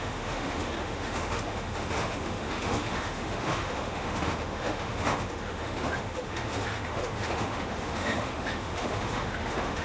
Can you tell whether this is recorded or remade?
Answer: remade